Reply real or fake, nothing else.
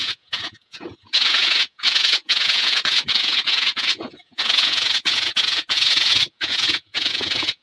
fake